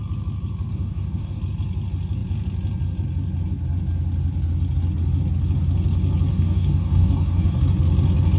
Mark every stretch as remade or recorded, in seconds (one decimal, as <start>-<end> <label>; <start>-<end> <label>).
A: 0.0-0.7 recorded; 0.7-1.4 remade; 1.4-6.3 recorded; 6.3-7.6 remade; 7.6-8.4 recorded